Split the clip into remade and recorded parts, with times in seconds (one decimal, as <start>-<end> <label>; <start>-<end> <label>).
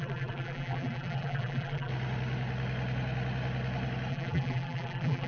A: 0.0-1.9 remade; 1.9-4.1 recorded; 4.1-5.3 remade